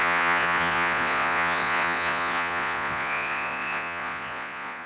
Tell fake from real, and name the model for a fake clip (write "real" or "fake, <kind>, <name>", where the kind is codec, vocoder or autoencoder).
fake, vocoder, Vocos